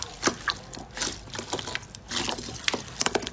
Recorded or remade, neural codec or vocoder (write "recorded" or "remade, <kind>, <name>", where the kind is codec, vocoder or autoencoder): recorded